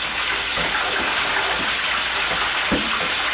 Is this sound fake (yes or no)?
no